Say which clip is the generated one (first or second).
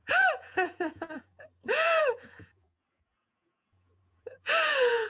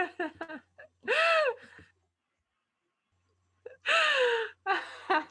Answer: first